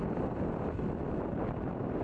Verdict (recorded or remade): recorded